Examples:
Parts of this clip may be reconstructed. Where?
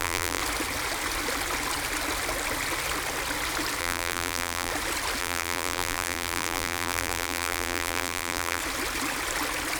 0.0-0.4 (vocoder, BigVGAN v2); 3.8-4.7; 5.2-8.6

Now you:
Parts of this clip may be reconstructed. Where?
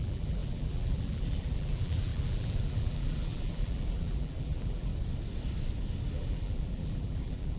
0.0-4.9 (vocoder, BigVGAN v2); 6.1-7.6